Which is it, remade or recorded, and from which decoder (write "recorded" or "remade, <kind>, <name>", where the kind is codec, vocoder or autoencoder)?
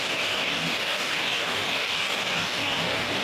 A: remade, codec, DAC